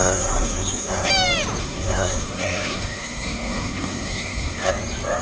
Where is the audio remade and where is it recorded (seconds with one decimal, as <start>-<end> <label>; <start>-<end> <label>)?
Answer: 0.0-1.1 remade; 1.1-1.6 recorded; 1.6-4.7 remade; 4.7-5.2 recorded